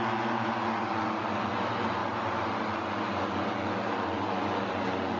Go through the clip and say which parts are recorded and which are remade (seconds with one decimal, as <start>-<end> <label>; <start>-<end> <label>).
0.0-5.2 recorded